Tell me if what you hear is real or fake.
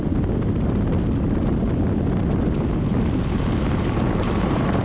real